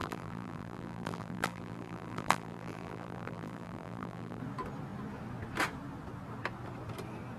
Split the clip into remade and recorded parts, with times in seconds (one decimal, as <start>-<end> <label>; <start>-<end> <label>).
0.0-4.4 remade; 4.4-7.4 recorded